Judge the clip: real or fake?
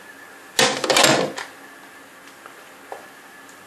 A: real